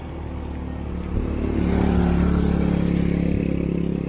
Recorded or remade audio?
recorded